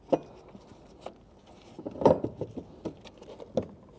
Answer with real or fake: real